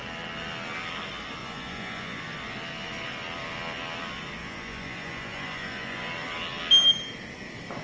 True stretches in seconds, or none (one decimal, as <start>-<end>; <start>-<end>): 0.0-1.4; 2.2-4.4; 6.1-7.8